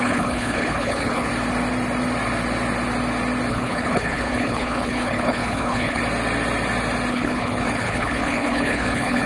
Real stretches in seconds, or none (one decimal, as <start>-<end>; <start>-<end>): 1.3-3.5; 6.0-7.1